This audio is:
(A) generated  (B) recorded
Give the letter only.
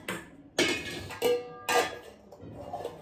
B